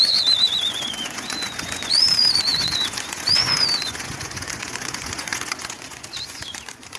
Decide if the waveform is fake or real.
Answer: fake